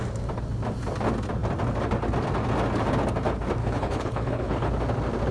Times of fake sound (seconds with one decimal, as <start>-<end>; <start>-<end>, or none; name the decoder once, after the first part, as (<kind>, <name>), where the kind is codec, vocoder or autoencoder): 3.6-4.7 (codec, HILCodec)

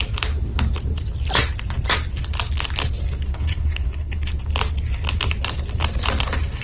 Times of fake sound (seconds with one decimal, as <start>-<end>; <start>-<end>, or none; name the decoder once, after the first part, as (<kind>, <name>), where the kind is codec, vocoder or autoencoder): 3.3-4.3 (codec, HILCodec)

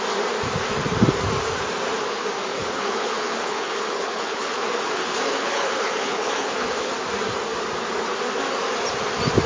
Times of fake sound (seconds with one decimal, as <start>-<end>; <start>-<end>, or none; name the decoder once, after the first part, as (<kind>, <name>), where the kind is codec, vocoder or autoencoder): 2.5-6.9 (codec, HILCodec)

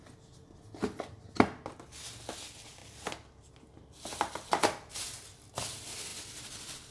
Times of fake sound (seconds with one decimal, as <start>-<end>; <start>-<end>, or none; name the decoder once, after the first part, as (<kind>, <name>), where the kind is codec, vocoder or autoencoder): none

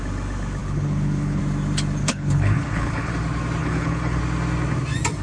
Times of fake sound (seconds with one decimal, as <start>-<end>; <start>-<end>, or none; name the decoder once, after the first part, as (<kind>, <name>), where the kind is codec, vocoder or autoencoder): 0.6-1.4 (codec, HILCodec); 2.0-3.1; 3.6-4.2

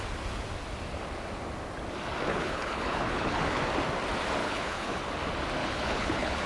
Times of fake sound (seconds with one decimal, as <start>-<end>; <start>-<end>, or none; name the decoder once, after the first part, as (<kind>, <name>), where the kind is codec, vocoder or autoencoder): 2.3-3.6 (codec, HILCodec); 4.4-5.0; 5.6-6.5